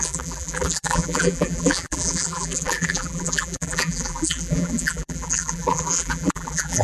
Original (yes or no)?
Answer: no